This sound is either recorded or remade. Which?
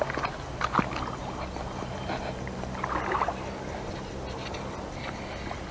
recorded